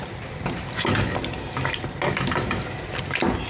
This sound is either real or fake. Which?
real